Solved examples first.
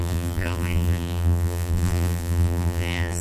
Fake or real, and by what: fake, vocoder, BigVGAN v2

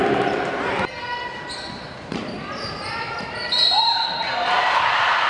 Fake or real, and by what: fake, vocoder, BigVGAN v2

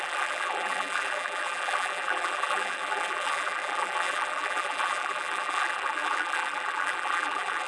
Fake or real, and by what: fake, vocoder, BigVGAN v2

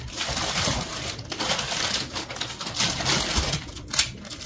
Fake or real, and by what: fake, vocoder, BigVGAN v2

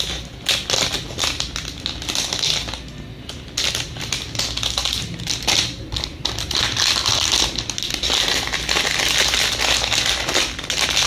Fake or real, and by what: real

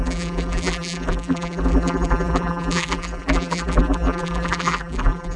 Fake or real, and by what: fake, vocoder, BigVGAN v2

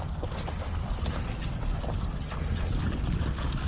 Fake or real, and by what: real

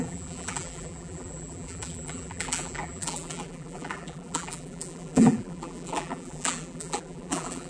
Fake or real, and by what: fake, vocoder, BigVGAN v2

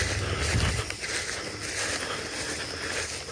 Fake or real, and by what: real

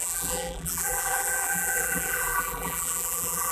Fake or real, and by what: fake, vocoder, BigVGAN v2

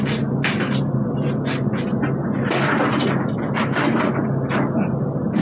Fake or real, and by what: real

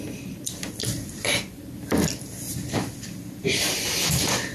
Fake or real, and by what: fake, vocoder, BigVGAN v2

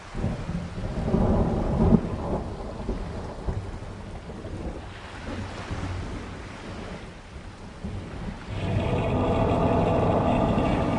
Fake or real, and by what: real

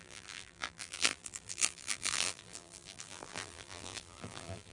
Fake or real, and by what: fake, vocoder, BigVGAN v2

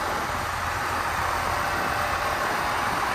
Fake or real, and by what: real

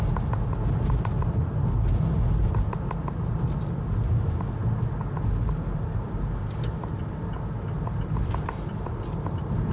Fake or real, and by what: real